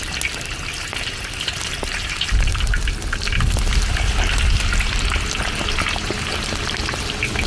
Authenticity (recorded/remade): recorded